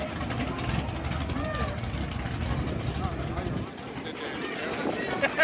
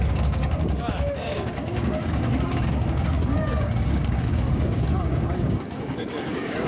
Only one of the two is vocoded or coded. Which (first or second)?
second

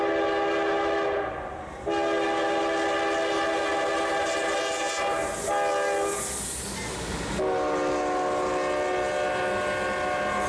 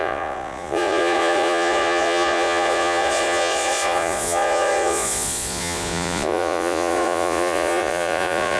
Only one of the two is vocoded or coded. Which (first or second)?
second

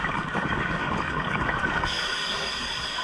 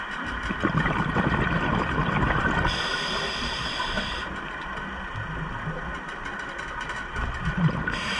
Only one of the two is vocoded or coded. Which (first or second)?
first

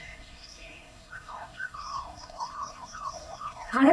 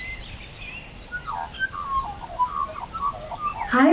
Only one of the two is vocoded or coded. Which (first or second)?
first